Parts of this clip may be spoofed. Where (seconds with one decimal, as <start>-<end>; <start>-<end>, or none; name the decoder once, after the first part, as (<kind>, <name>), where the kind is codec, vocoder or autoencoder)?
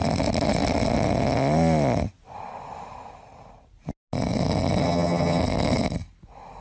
4.8-5.4 (vocoder, HiFi-GAN)